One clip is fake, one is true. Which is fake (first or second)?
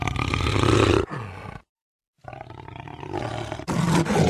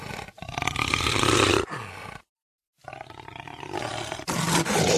second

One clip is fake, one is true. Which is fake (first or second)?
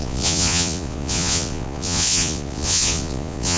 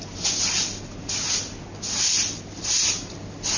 first